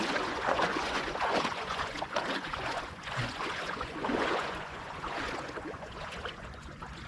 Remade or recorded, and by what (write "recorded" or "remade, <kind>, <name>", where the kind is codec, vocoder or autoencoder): remade, vocoder, Vocos